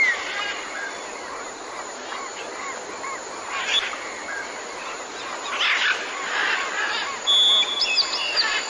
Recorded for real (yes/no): yes